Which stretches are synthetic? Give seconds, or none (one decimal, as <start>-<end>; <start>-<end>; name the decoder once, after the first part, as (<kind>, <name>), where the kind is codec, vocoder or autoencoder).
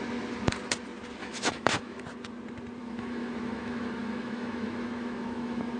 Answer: 1.2-2.0 (autoencoder, DAC-VAE); 2.8-5.8